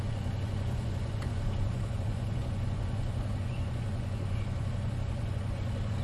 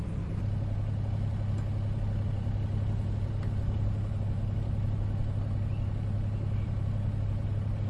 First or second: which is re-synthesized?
first